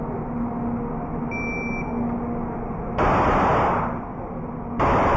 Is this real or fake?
real